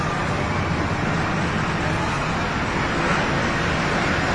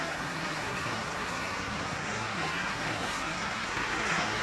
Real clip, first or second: first